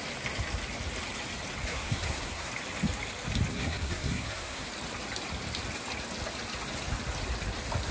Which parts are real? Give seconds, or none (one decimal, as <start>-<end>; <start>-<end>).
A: 0.0-1.7; 2.5-3.5; 4.7-7.9